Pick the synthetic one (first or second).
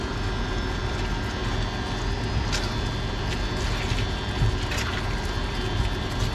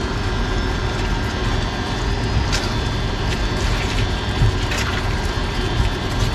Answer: second